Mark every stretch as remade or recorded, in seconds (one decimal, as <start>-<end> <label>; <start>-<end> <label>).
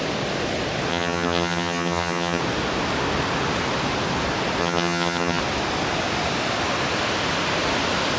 0.0-0.9 recorded; 0.9-2.4 remade; 2.4-4.6 recorded; 4.6-5.4 remade; 5.4-8.2 recorded